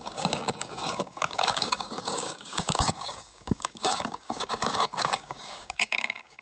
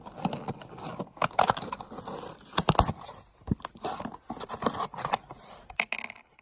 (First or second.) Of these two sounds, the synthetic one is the first